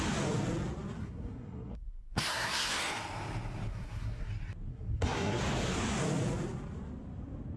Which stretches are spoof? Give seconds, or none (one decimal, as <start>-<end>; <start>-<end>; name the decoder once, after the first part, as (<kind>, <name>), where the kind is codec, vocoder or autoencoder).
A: 1.0-2.8 (codec, SNAC); 3.7-4.3; 4.7-5.4